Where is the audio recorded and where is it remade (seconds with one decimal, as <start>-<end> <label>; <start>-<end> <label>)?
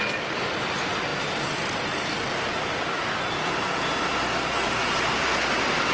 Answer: 0.0-5.9 recorded